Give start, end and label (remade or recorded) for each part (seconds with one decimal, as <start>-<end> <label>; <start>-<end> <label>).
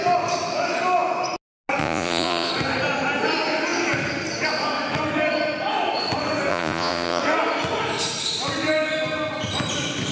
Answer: 0.0-1.8 recorded; 1.8-2.5 remade; 2.5-6.5 recorded; 6.5-7.2 remade; 7.2-10.1 recorded